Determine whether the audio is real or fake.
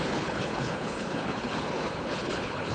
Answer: fake